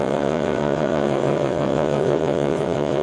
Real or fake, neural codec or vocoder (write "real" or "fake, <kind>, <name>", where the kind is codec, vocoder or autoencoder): fake, vocoder, WaveNeXt